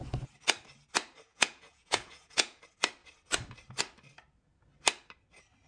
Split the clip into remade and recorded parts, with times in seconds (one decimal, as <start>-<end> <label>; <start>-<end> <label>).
0.0-1.3 recorded; 1.3-2.6 remade; 2.6-5.7 recorded